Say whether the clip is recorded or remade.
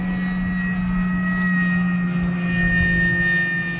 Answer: recorded